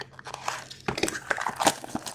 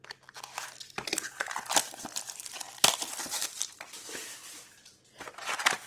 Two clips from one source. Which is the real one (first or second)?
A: first